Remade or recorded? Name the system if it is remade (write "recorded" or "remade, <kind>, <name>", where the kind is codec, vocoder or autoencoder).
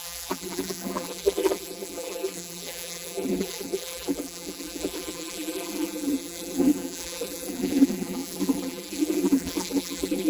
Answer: remade, vocoder, BigVGAN v2